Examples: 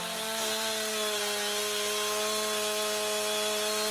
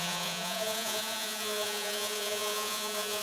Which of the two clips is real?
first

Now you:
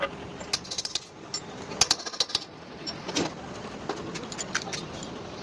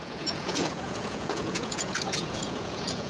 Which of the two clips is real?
first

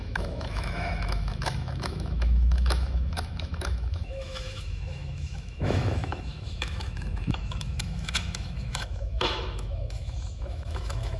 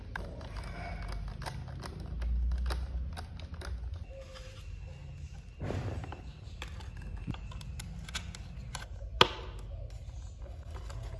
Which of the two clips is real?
second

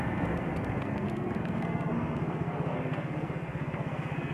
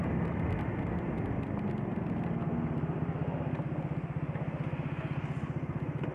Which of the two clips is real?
second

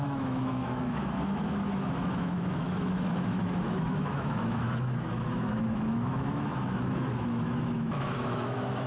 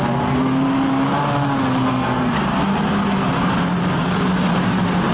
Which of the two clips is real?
second